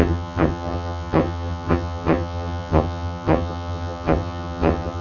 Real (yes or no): no